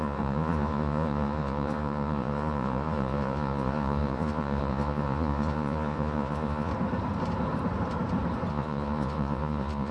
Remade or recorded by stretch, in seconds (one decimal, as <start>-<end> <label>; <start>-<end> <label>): 0.0-6.7 remade; 6.7-8.5 recorded; 8.5-9.9 remade